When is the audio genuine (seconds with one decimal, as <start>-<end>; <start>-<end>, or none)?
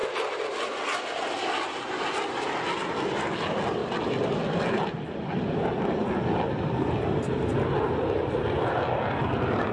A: 0.0-9.7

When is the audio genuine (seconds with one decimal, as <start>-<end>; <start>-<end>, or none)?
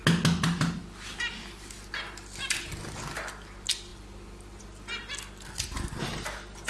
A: 0.0-6.7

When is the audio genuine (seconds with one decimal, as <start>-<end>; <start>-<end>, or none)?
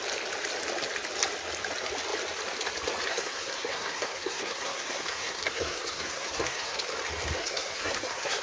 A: 0.0-3.1; 6.8-7.4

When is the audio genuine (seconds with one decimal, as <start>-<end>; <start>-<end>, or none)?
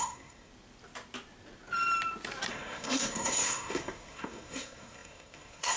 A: 0.5-2.5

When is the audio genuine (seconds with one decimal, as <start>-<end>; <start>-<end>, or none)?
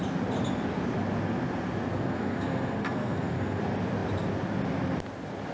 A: 0.0-1.9; 3.6-5.5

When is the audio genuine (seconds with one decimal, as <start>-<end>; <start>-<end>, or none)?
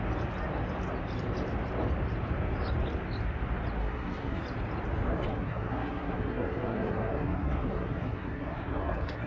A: 0.0-3.8; 4.4-5.3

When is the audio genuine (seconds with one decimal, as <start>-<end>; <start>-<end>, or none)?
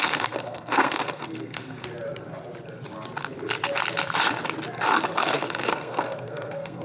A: 1.9-4.9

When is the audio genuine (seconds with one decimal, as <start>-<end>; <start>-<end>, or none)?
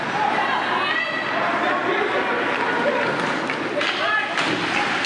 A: 0.0-5.1